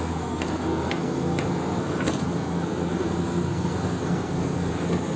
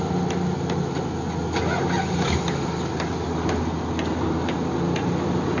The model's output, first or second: first